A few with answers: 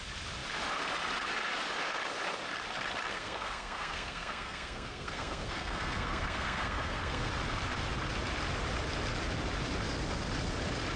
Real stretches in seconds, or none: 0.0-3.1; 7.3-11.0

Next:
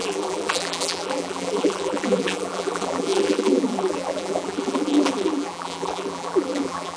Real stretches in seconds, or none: none

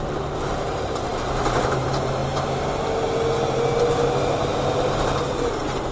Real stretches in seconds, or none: 2.2-3.8; 4.5-5.2

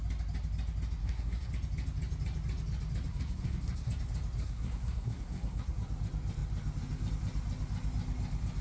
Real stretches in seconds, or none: 0.0-1.0; 1.5-3.1; 3.9-4.4; 5.7-8.6

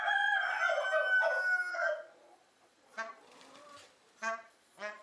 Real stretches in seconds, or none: 0.0-1.7; 3.2-4.2